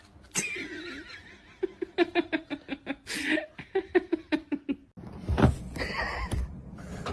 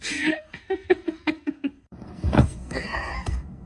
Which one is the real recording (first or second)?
first